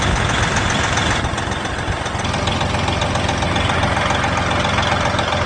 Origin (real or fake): real